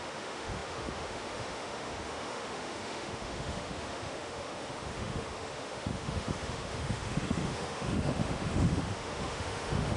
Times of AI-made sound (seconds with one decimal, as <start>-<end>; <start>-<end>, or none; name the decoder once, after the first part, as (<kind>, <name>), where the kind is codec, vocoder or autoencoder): 0.0-10.0 (autoencoder, DAC-VAE)